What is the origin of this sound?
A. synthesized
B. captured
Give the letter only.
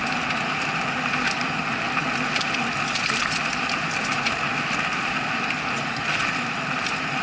B